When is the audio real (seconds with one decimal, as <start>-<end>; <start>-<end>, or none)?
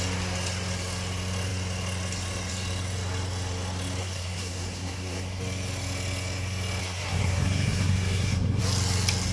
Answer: 0.0-4.0; 5.4-6.8; 8.6-9.3